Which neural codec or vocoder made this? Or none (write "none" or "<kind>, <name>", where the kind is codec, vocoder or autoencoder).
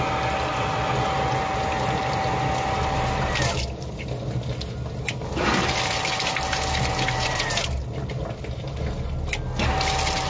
none